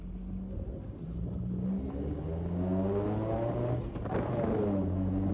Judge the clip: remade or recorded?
recorded